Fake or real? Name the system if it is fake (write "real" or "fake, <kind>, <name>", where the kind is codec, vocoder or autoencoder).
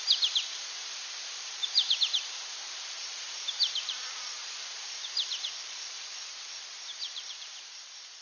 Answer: fake, vocoder, BigVGAN v2